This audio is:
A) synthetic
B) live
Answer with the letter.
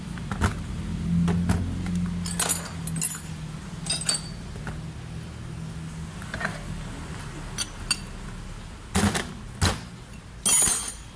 B